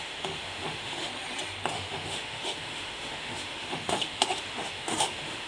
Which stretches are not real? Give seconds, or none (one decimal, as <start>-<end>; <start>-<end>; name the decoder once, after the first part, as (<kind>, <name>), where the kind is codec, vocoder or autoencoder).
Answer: 0.0-1.1 (autoencoder, DAC-VAE); 1.7-5.5